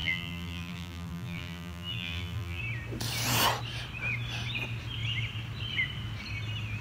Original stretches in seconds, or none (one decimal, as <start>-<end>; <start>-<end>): 2.6-6.8